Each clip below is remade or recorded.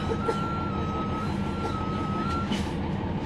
recorded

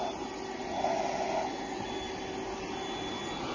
recorded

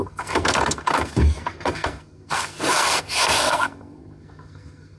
remade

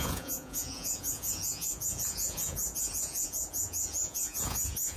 remade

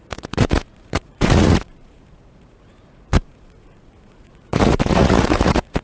remade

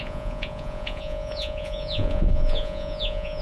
remade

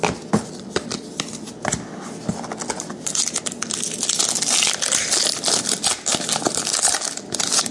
recorded